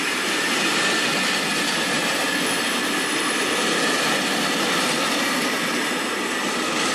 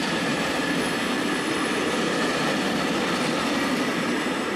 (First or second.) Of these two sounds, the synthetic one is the second